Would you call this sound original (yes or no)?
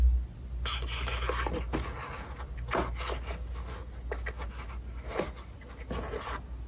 yes